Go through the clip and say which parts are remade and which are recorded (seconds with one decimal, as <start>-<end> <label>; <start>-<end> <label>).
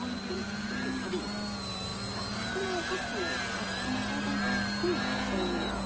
0.0-5.9 recorded